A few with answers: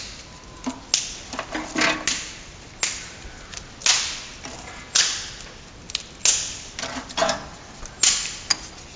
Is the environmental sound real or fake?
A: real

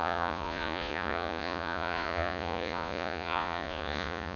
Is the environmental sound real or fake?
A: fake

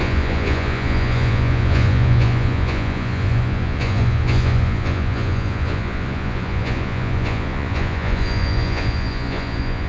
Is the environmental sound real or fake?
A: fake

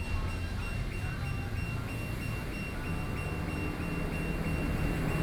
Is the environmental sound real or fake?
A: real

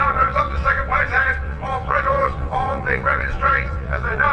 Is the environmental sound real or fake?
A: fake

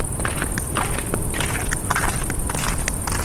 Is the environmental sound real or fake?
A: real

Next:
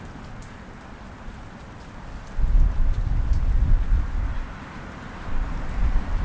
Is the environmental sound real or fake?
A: real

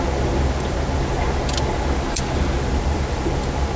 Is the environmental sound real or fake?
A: real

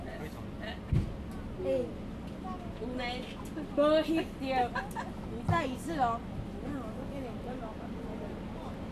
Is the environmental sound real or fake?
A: real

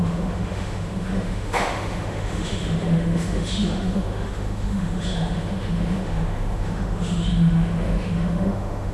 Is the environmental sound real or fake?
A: fake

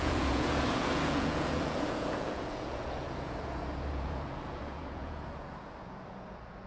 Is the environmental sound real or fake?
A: fake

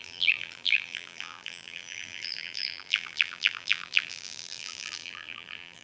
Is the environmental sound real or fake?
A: fake